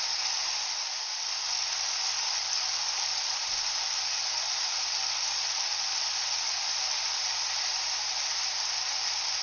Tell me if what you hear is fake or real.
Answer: real